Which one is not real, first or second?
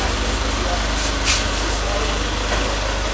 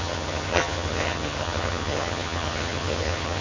second